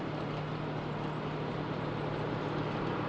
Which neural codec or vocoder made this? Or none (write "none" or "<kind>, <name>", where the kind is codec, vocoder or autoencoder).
none